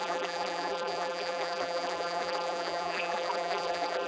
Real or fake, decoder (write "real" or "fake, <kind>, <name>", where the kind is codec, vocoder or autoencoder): fake, vocoder, BigVGAN v2